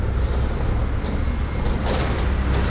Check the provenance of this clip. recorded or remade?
recorded